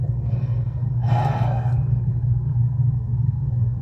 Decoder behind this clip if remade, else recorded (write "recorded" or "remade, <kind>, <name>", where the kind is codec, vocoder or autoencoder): remade, codec, SNAC